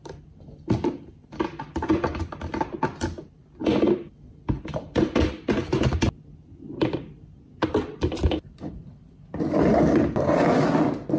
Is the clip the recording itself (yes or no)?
yes